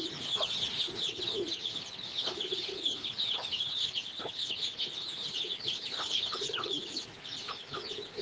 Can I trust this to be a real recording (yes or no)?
no